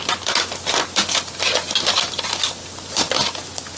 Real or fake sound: real